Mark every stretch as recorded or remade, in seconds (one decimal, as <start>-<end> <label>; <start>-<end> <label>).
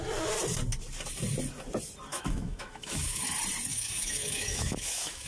0.0-2.1 recorded; 2.1-3.2 remade; 3.2-3.7 recorded; 3.7-5.3 remade